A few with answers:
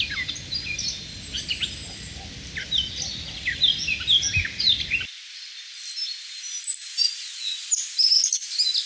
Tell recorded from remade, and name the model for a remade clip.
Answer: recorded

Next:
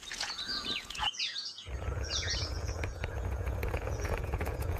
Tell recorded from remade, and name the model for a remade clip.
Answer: remade, vocoder, Vocos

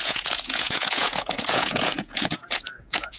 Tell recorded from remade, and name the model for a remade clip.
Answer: remade, vocoder, Vocos